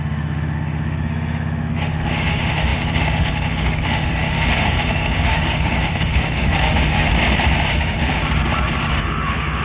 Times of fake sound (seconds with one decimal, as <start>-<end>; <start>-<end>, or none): 0.0-7.1; 7.7-8.2; 8.9-9.6

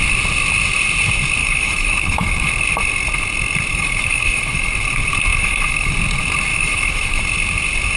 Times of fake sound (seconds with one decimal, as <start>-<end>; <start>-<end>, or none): 1.4-2.5; 3.7-4.7; 5.3-5.9; 6.5-7.2

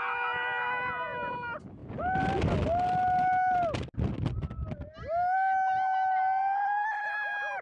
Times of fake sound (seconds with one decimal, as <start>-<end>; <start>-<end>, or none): none

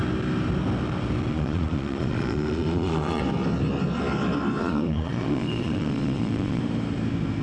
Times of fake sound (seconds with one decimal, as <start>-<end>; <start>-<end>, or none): 1.3-3.2; 4.6-6.6

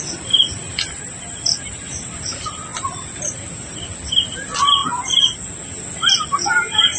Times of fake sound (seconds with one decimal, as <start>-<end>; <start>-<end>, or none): none

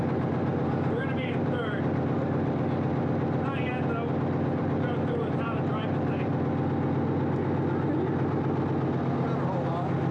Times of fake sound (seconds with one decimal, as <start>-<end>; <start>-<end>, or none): 0.0-3.7; 4.6-6.3

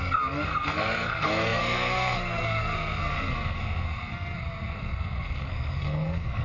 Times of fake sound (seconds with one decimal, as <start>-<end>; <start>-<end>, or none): 0.0-6.4

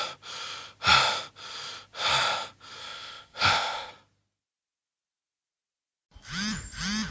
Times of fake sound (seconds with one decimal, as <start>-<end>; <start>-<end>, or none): 2.8-3.9